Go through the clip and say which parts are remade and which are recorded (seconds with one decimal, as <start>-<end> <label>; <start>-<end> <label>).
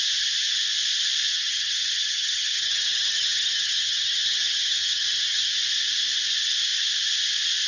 0.0-1.3 recorded; 1.3-5.4 remade; 5.4-7.7 recorded